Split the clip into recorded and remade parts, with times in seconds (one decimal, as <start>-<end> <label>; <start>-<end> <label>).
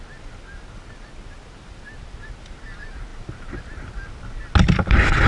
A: 0.0-5.3 recorded